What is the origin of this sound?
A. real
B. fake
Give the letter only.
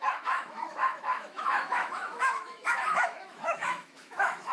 B